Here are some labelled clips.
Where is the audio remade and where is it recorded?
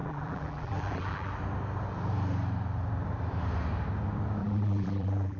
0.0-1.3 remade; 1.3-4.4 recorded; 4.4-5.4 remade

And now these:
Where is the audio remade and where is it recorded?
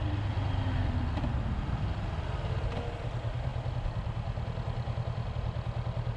0.0-6.2 recorded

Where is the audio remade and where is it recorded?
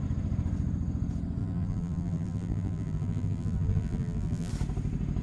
0.0-1.4 recorded; 1.4-4.5 remade; 4.5-5.2 recorded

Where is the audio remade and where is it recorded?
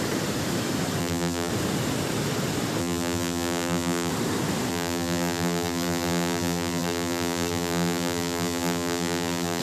0.0-1.0 recorded; 1.0-1.5 remade; 1.5-2.8 recorded; 2.8-4.1 remade; 4.1-4.7 recorded; 4.7-9.6 remade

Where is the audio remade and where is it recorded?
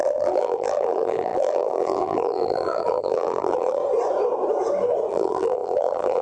0.0-3.8 remade; 3.8-5.1 recorded; 5.1-6.2 remade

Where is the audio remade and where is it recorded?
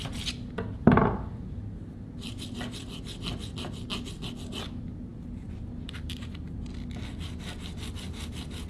0.0-3.3 remade; 3.3-4.6 recorded; 4.6-8.7 remade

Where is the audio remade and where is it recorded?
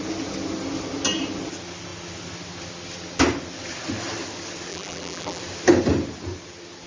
0.0-4.7 recorded; 4.7-5.4 remade; 5.4-6.9 recorded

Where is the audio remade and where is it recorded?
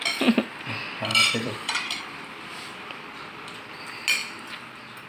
0.0-1.1 recorded; 1.1-2.0 remade; 2.0-5.1 recorded